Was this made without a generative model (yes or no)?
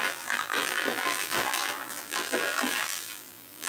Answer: no